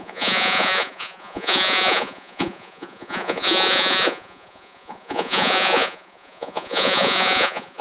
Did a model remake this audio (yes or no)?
yes